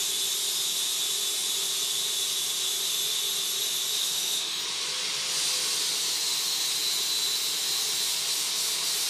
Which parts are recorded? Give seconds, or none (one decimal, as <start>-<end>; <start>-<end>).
0.0-4.0; 4.6-9.1